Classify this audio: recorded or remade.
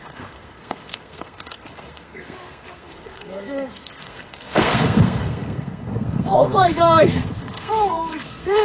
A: remade